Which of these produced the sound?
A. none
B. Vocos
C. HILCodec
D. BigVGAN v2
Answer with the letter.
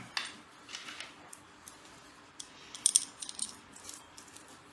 A